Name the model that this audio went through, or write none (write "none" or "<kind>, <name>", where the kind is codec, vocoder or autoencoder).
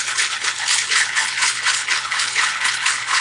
codec, HILCodec